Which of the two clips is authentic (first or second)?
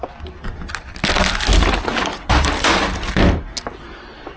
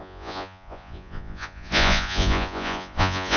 first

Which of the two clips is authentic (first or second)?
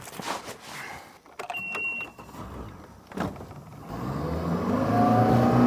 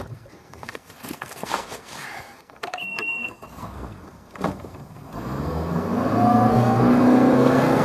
first